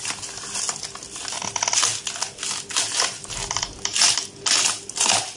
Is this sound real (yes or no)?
yes